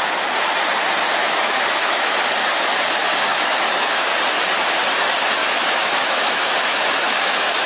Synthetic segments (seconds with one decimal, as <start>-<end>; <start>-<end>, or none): 1.2-2.2; 3.3-4.1; 5.4-7.7